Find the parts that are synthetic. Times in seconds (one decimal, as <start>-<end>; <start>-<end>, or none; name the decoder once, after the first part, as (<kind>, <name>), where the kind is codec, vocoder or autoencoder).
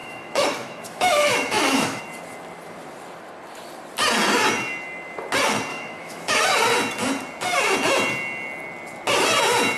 0.0-2.0 (autoencoder, DAC-VAE); 5.7-6.4